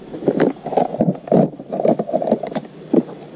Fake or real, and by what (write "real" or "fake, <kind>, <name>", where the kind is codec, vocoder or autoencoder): real